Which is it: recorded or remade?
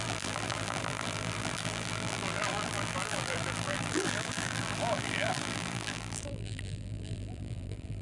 remade